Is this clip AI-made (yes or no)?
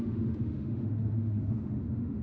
yes